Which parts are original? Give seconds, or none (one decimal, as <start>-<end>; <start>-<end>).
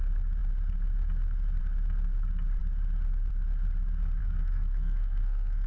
0.0-4.2